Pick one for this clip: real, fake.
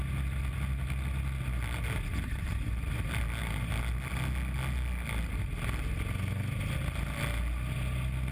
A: real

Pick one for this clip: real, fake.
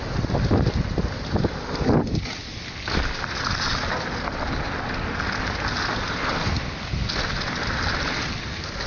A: real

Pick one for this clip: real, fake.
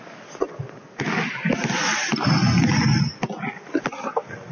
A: real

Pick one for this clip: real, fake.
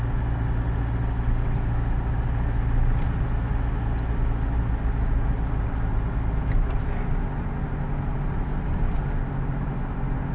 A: real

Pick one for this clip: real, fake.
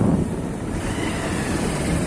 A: real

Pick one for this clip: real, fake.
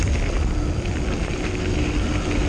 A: real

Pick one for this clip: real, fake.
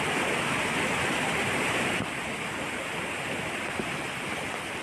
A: real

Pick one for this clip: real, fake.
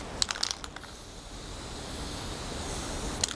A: real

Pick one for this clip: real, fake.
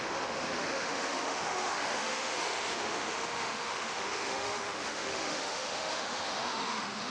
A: fake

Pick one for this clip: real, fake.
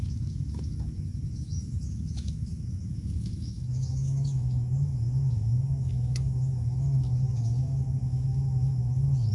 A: fake